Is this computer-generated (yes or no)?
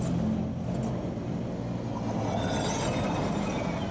no